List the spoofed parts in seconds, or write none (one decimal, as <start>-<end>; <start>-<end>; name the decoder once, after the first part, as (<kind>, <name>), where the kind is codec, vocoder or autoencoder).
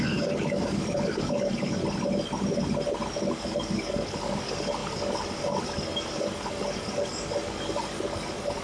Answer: 0.0-1.8 (codec, DAC); 3.3-8.6